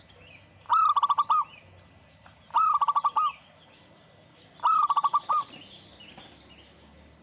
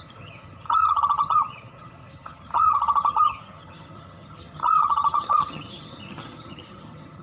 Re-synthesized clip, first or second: second